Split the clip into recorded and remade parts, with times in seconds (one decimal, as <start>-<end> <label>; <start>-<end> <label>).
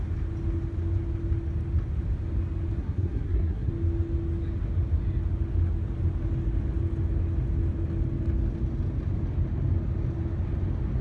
0.0-2.8 recorded; 2.8-3.7 remade; 3.7-11.0 recorded